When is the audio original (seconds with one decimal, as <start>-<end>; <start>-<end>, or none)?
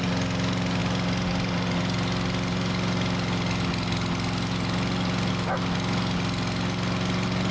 0.0-7.5